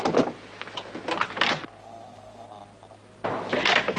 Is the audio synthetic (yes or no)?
no